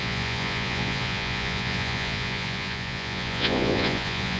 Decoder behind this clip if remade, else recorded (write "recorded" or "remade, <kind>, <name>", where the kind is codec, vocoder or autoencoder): remade, vocoder, Vocos